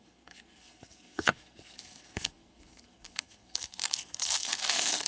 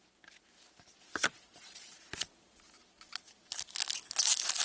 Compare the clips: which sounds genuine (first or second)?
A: second